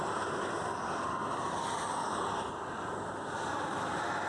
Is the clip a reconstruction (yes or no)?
no